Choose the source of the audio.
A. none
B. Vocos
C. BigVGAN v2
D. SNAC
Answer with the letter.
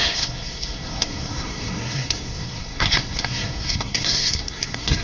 D